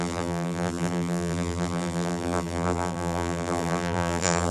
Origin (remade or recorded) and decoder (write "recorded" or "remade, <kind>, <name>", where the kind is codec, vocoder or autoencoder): remade, vocoder, BigVGAN v2